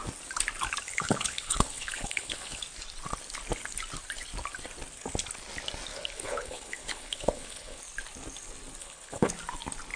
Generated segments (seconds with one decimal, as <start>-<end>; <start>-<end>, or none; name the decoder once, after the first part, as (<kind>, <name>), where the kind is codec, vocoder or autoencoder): 0.9-2.6 (codec, HILCodec); 5.9-7.8; 8.8-9.3